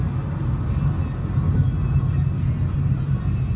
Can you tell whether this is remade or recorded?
recorded